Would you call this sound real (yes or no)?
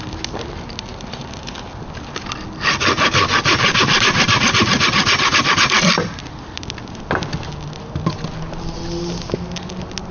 yes